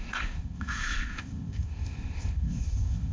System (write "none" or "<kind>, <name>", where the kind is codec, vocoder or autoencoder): codec, ZipCodec